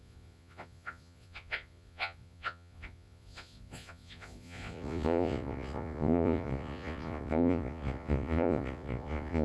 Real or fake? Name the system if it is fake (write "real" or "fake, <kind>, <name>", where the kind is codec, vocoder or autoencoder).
fake, vocoder, Vocos